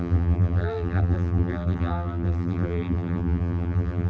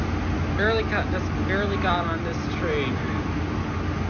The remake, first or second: first